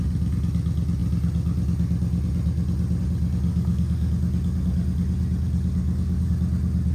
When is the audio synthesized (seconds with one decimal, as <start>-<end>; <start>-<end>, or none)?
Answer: 3.5-4.1; 5.8-6.3